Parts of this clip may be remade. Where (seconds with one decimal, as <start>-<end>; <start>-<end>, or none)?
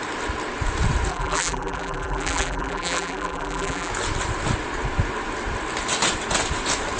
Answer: 1.1-3.9